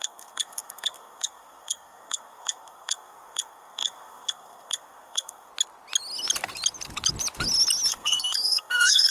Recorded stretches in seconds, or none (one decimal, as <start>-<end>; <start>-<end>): 5.5-7.9

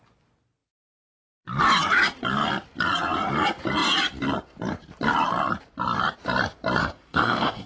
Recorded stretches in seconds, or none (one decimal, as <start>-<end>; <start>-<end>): 0.0-6.8

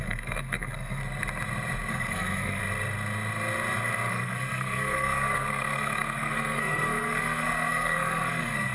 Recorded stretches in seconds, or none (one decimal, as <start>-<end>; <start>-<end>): 1.0-1.9; 2.6-4.1

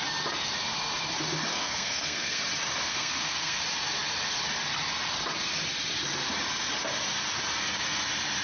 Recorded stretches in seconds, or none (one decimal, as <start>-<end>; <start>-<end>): 0.0-1.5; 2.4-2.9; 3.6-8.4

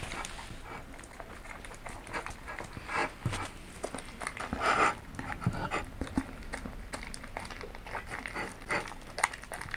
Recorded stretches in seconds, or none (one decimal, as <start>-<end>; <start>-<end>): 0.0-9.8

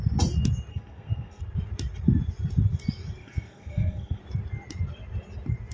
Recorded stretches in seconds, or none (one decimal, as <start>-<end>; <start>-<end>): 0.0-0.7; 1.4-3.2; 4.2-5.7

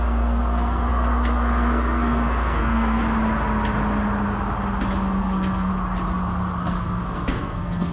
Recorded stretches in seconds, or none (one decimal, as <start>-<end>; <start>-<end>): 3.0-5.2; 5.7-6.6